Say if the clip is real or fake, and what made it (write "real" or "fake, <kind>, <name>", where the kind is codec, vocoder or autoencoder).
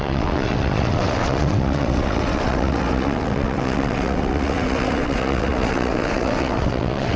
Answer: fake, vocoder, WaveNeXt